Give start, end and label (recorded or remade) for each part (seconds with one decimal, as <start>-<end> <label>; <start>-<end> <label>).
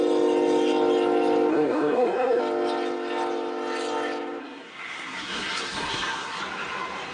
0.0-1.5 recorded; 1.5-2.4 remade; 2.4-4.4 recorded; 4.4-6.4 remade; 6.4-7.1 recorded